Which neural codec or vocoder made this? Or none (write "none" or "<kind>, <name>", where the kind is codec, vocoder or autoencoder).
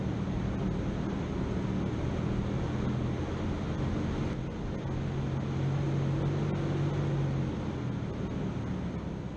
none